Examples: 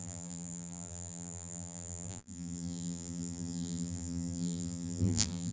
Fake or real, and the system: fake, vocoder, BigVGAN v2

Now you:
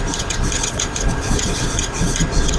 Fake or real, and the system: fake, vocoder, Vocos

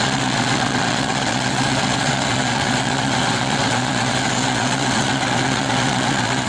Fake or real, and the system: fake, vocoder, WaveNeXt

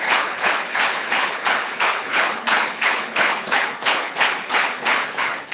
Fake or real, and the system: fake, codec, HILCodec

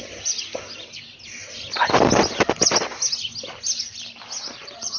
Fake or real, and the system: real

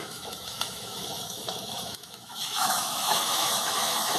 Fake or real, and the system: fake, autoencoder, DAC-VAE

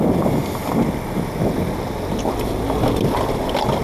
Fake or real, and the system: real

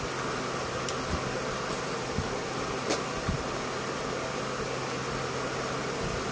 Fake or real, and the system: real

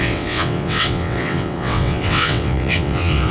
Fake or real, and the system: fake, vocoder, WaveNeXt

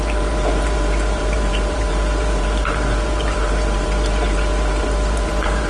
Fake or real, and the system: fake, vocoder, BigVGAN v2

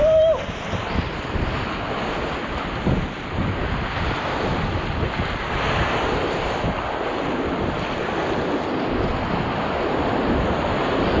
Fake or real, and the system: real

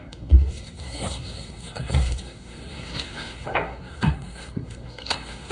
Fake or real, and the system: fake, codec, SNAC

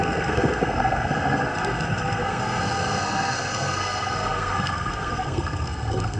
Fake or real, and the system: fake, codec, SNAC